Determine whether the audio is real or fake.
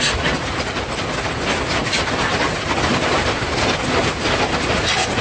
real